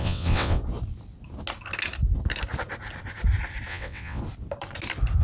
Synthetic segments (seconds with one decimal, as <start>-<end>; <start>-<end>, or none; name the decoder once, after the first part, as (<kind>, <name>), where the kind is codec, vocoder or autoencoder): 0.0-0.6 (vocoder, WaveNeXt); 3.7-4.2